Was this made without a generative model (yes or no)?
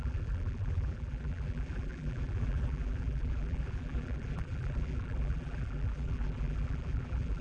no